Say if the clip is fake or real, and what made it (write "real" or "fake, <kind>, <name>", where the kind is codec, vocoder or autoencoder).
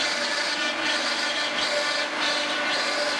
real